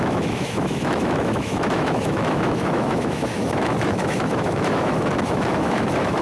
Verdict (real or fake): fake